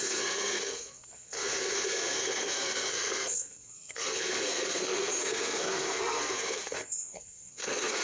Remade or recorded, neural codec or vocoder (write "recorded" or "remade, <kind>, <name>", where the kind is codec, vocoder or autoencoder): remade, codec, SNAC